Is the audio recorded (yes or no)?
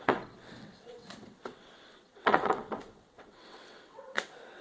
no